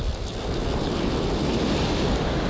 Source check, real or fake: real